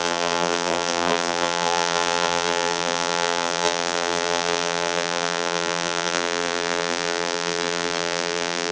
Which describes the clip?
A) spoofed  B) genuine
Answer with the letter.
A